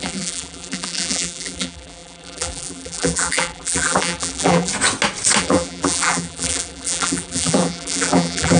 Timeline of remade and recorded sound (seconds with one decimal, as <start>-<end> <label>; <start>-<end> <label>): 0.0-4.7 remade; 4.7-5.4 recorded; 5.4-8.6 remade